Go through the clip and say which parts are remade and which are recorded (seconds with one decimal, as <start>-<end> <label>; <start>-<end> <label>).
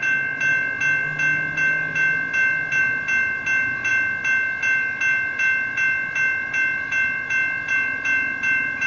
0.0-8.9 recorded